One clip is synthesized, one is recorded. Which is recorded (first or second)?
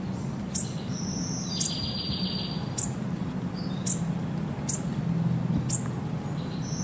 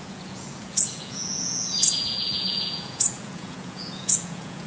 first